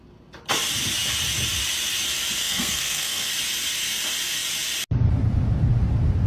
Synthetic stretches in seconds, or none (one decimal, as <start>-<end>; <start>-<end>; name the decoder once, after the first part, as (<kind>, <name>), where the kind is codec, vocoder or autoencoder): 2.4-3.3 (codec, SNAC)